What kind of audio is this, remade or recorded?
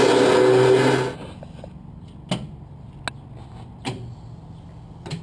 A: recorded